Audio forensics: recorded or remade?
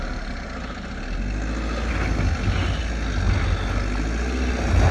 recorded